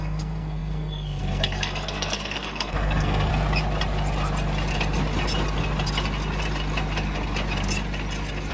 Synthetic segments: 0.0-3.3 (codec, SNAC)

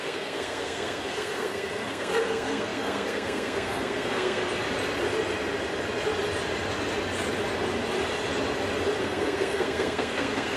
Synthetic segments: 0.0-4.4 (codec, SNAC); 9.0-10.6

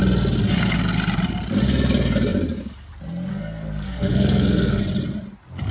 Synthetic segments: 3.3-4.8 (codec, SNAC)

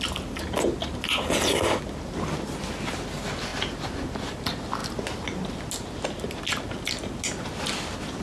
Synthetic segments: none

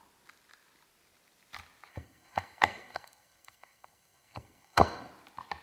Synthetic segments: 1.9-5.1 (codec, SNAC)

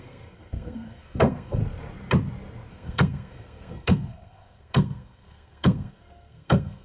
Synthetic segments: 0.0-1.6 (codec, SNAC); 2.7-6.8

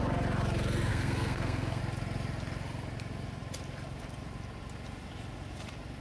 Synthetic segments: 0.9-1.8 (codec, SNAC)